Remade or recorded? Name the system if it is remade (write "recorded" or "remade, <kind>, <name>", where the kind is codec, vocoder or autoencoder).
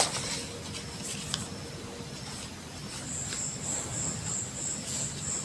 recorded